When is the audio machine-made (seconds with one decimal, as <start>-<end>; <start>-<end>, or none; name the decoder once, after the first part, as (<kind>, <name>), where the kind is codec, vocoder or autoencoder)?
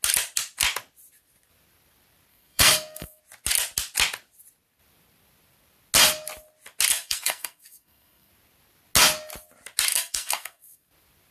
2.3-3.2 (codec, SNAC); 6.9-8.3; 9.9-10.9